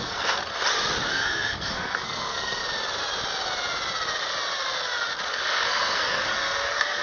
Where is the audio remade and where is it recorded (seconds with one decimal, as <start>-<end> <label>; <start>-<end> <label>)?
0.0-0.5 remade; 0.5-1.1 recorded; 1.1-2.6 remade; 2.6-5.3 recorded; 5.3-7.0 remade